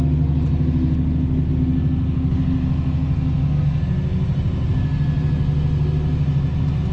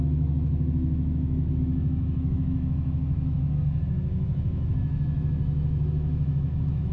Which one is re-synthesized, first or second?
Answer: second